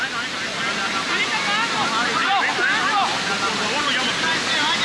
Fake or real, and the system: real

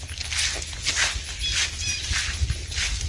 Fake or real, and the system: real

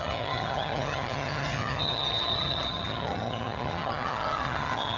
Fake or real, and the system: fake, vocoder, HiFi-GAN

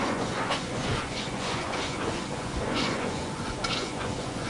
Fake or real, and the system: fake, vocoder, Vocos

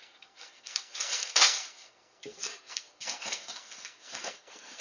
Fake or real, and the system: fake, codec, SNAC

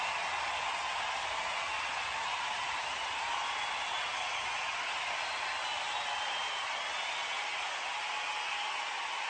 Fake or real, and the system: real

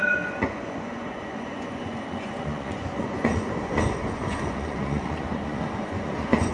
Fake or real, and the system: fake, vocoder, Vocos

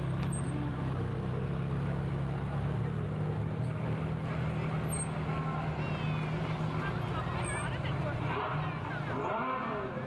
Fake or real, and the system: real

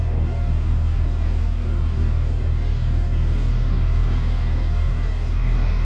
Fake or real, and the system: fake, codec, DAC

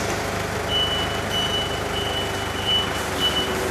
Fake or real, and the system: real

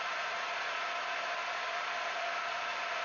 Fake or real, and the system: real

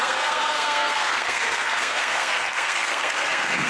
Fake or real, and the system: fake, codec, SNAC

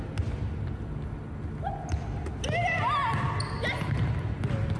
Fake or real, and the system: real